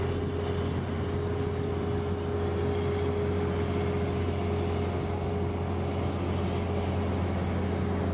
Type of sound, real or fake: real